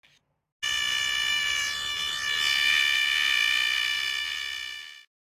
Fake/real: real